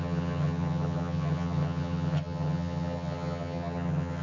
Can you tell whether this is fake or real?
fake